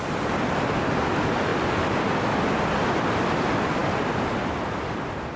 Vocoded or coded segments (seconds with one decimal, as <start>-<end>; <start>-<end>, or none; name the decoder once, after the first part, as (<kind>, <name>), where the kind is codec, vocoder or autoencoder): 3.8-4.4 (vocoder, BigVGAN v2)